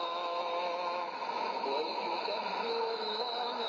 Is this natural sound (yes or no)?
no